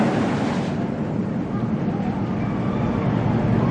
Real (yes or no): yes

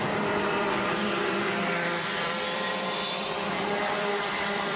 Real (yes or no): no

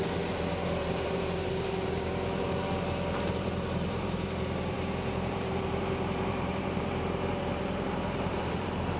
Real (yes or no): no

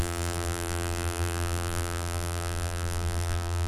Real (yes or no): no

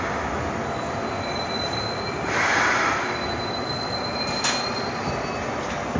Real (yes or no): yes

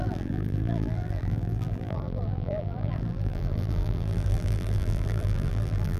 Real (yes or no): no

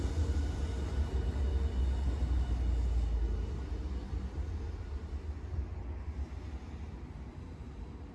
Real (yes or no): yes